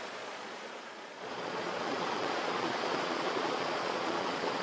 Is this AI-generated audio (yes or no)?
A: yes